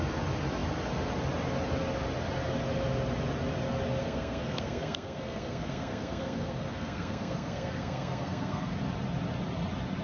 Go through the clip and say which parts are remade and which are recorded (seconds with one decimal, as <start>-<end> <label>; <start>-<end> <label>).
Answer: 0.0-4.0 recorded; 4.0-8.7 remade; 8.7-10.0 recorded